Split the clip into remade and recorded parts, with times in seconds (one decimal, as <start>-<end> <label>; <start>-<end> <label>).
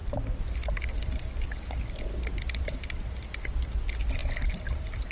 0.0-4.2 recorded; 4.2-5.1 remade